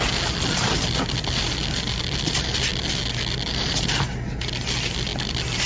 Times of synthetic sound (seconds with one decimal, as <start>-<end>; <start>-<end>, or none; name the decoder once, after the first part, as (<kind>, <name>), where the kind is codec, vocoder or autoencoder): none